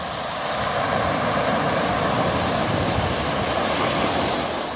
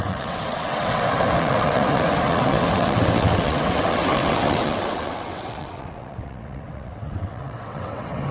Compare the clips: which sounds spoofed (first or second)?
second